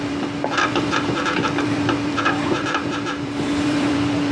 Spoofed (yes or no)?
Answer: yes